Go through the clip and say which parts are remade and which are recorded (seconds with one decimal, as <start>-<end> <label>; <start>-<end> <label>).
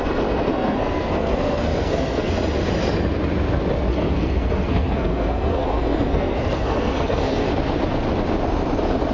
0.0-0.5 recorded; 0.5-2.3 remade; 2.3-3.9 recorded; 3.9-7.5 remade; 7.5-9.1 recorded